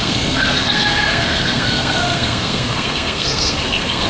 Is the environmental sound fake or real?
fake